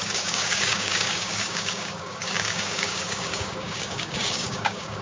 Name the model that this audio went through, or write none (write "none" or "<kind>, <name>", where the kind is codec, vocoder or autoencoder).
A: codec, DAC